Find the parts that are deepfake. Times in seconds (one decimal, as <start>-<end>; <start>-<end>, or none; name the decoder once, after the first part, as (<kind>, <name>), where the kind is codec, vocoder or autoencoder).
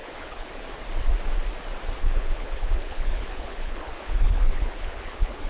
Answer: 0.0-0.5 (codec, HILCodec); 2.0-5.5